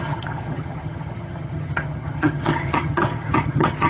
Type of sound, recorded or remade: remade